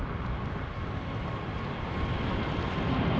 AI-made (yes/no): no